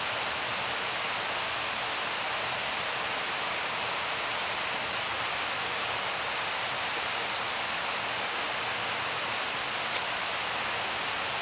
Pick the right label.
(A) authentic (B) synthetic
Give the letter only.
A